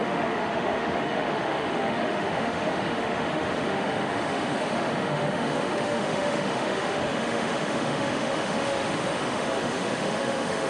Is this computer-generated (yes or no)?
yes